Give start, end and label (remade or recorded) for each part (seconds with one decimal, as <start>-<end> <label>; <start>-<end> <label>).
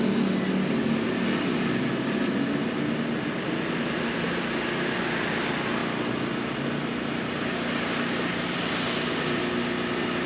0.0-10.3 recorded